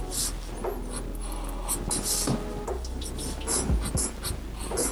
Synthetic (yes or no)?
no